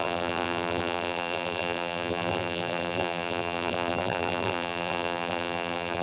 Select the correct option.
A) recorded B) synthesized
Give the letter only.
B